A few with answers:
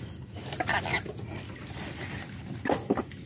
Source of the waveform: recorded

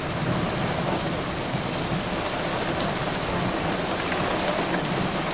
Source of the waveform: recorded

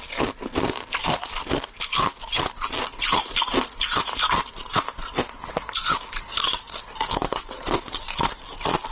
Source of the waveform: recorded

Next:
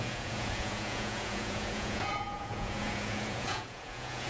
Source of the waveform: remade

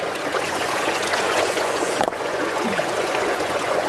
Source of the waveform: remade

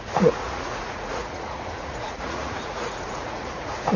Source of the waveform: remade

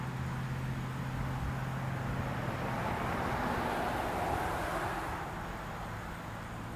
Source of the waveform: recorded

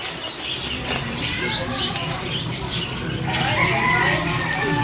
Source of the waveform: recorded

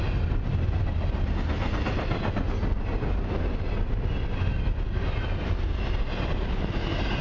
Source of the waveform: recorded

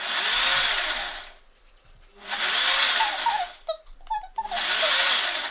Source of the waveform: recorded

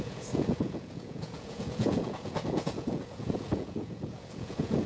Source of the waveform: remade